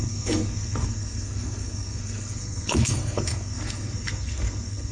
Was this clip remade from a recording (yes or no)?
yes